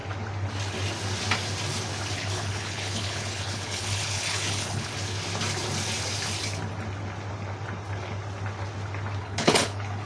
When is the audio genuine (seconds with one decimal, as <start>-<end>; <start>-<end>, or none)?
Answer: 0.0-2.1; 4.9-9.2